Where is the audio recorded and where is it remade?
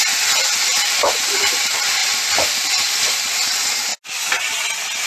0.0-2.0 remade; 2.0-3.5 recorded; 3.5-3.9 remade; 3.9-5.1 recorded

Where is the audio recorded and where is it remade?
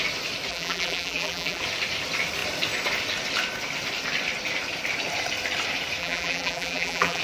0.0-0.5 recorded; 0.5-1.6 remade; 1.6-6.0 recorded; 6.0-7.2 remade